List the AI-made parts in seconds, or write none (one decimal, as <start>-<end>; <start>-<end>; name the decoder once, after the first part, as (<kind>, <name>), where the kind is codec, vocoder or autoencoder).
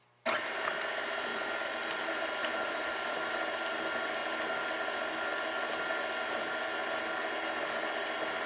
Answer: 2.4-3.1 (vocoder, BigVGAN v2)